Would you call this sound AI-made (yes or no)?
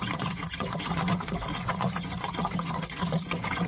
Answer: yes